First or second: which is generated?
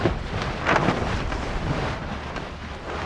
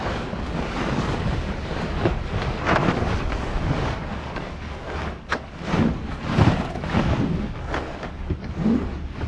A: second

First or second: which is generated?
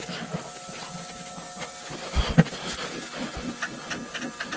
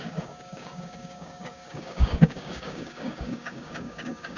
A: second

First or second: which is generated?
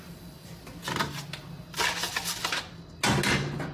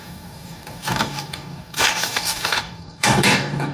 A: second